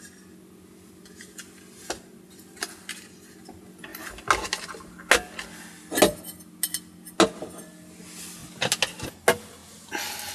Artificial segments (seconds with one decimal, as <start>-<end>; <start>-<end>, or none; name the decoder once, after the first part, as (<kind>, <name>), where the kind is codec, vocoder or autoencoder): none